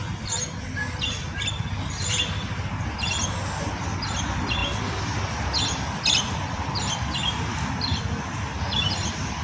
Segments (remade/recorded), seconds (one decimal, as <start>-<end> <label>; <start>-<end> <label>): 0.0-9.4 recorded